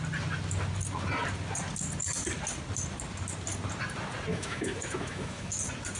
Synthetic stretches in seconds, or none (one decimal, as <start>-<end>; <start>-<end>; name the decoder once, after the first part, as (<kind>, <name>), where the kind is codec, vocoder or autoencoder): 4.3-5.5 (autoencoder, DAC-VAE)